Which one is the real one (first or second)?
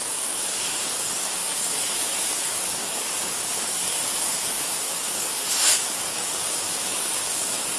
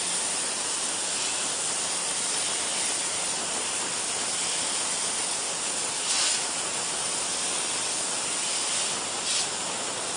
second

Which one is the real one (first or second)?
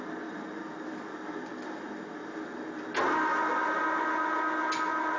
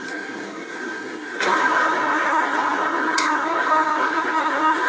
first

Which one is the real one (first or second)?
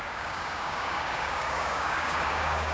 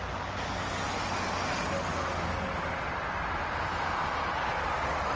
second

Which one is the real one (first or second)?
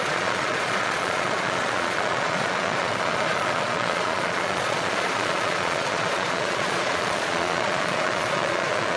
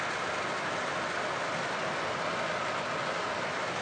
second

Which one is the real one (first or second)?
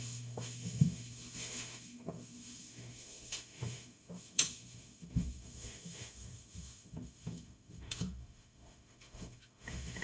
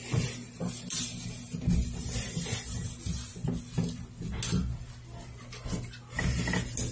second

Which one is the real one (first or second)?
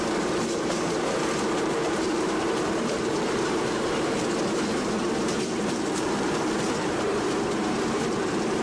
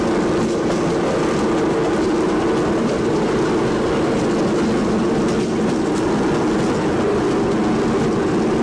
second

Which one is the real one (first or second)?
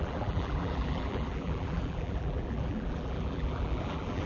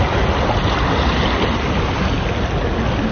second